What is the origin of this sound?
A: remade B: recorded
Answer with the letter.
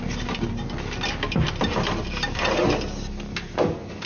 B